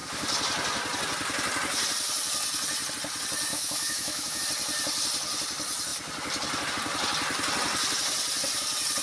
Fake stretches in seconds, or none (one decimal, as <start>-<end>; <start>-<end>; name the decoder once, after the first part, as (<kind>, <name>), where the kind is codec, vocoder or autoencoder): 3.5-4.4 (autoencoder, DAC-VAE)